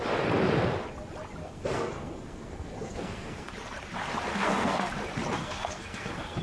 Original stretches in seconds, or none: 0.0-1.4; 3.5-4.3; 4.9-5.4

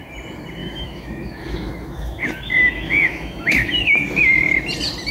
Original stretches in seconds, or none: 0.0-0.6; 3.7-5.1

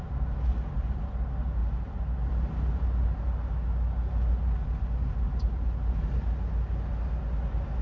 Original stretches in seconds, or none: 0.0-7.8

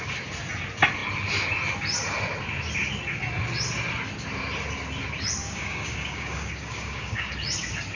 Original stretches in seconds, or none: 0.0-5.4; 7.3-8.0

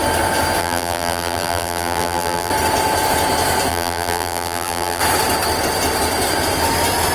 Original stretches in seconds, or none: 0.0-0.6; 2.5-3.7; 5.0-7.1

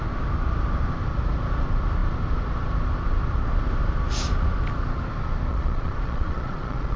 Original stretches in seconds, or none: 0.0-5.5